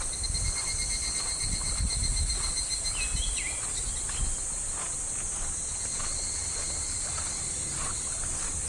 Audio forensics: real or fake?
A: real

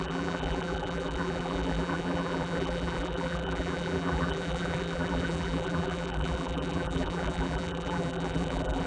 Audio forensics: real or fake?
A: fake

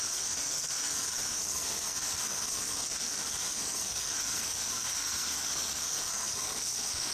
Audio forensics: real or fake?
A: fake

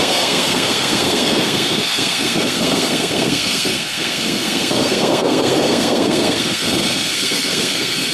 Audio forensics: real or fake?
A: fake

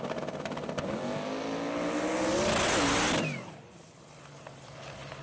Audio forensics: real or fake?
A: real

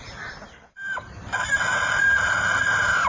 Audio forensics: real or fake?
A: real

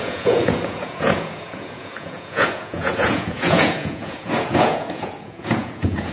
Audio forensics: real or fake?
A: fake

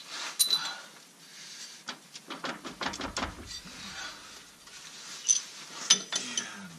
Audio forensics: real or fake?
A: real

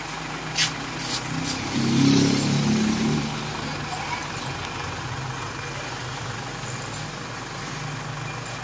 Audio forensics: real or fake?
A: real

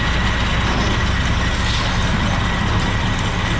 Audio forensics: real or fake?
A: real